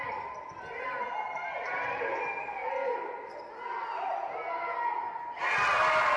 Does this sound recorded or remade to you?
recorded